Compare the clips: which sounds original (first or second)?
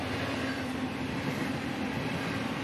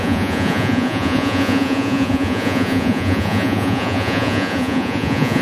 first